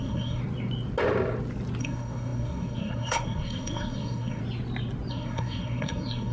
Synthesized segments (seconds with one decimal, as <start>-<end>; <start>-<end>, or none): 0.0-0.4; 1.8-4.4; 5.1-6.3